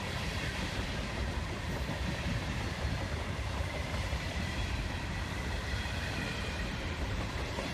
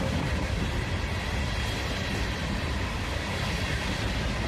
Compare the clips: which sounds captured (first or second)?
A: second